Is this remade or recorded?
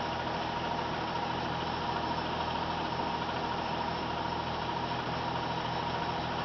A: recorded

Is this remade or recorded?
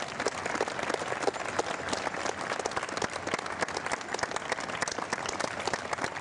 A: recorded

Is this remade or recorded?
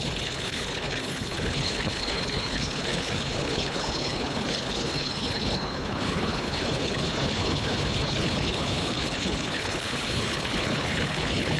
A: remade